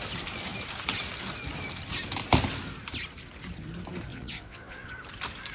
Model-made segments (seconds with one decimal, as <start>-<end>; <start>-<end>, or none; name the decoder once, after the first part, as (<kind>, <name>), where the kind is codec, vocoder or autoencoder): 4.1-4.9 (vocoder, Vocos)